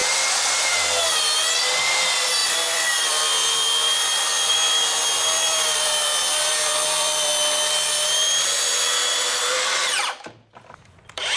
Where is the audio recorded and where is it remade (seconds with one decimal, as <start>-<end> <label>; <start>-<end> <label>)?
0.0-0.7 recorded; 0.7-7.3 remade; 7.3-8.4 recorded; 8.4-11.4 remade